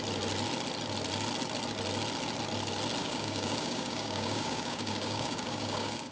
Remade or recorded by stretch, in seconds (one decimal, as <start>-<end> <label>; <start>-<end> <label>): 0.0-3.0 recorded; 3.0-6.1 remade